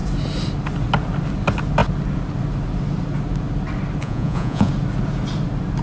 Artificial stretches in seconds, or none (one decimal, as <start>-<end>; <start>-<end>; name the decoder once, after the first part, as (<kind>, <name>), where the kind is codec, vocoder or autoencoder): 4.0-4.7 (vocoder, Vocos)